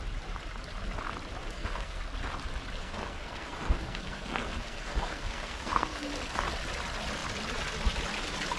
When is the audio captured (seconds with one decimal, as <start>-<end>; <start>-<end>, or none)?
0.0-1.4; 2.0-2.8; 6.1-8.6